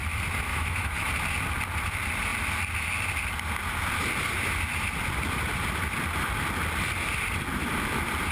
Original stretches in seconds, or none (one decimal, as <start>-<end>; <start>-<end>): 0.0-0.5; 1.1-8.3